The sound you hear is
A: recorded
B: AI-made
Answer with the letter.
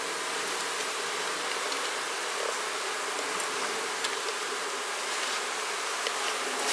A